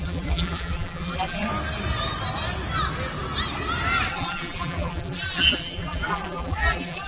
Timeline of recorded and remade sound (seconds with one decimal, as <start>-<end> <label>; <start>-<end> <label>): 0.0-1.5 remade; 1.5-4.1 recorded; 4.1-7.1 remade